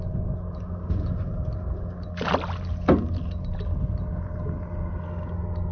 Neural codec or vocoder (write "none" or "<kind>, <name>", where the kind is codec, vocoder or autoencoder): none